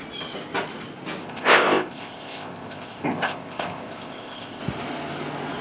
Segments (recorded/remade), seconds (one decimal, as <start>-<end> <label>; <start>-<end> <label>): 0.0-1.2 recorded; 1.2-4.6 remade; 4.6-5.6 recorded